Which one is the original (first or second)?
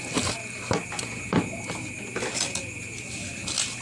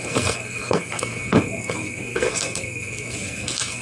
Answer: first